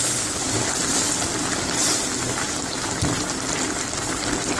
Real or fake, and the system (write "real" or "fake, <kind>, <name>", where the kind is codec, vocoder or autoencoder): real